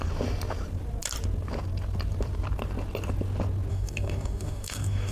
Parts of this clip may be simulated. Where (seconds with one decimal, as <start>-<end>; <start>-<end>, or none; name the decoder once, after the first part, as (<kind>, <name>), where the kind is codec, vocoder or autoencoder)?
3.7-5.1 (codec, DAC)